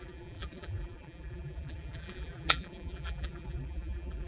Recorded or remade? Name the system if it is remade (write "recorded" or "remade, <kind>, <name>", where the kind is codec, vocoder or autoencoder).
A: remade, vocoder, BigVGAN v2